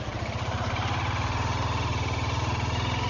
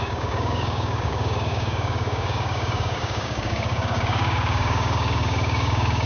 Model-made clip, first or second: second